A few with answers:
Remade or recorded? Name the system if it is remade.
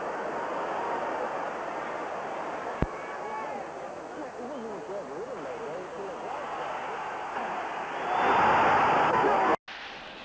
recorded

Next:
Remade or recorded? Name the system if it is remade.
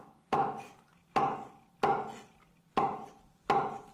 recorded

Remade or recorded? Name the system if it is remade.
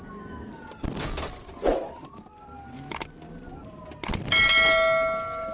recorded